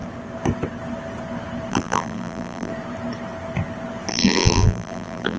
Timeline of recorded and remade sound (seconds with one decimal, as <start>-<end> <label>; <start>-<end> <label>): 0.0-1.7 recorded; 1.7-2.7 remade; 2.7-4.1 recorded; 4.1-5.4 remade